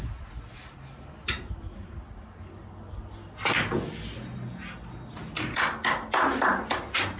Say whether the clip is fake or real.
real